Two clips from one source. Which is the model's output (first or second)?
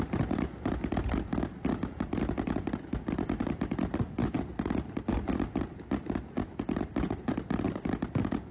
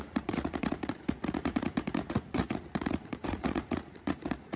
second